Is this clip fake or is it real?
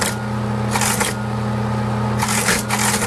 real